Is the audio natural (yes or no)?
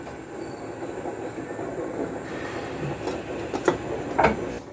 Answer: yes